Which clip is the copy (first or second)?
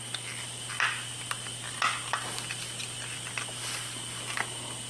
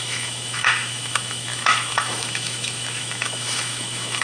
second